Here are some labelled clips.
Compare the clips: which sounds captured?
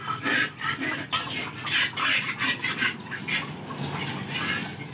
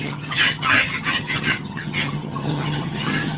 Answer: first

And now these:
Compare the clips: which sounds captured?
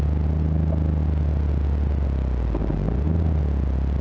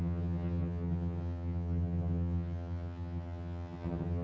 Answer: first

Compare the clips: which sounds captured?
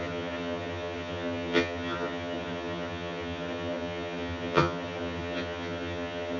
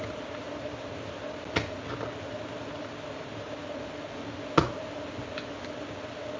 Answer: second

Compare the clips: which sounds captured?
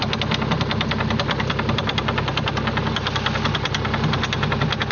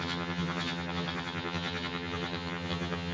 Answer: first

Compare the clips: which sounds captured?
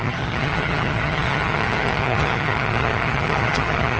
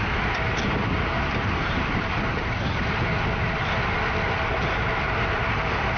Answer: second